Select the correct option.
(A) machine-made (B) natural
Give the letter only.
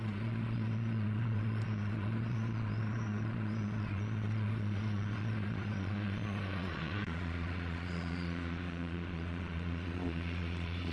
A